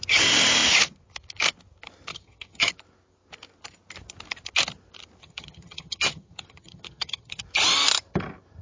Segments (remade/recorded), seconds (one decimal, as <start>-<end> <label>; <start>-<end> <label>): 0.0-2.1 recorded; 2.1-2.7 remade; 2.7-5.2 recorded; 5.2-7.4 remade; 7.4-8.6 recorded